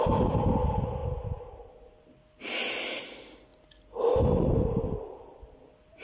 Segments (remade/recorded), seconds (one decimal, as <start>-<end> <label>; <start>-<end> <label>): 0.0-6.0 recorded